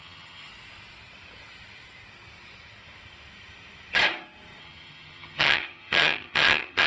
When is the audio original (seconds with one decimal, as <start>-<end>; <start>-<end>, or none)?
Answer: 0.5-4.6